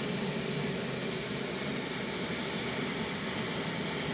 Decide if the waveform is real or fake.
real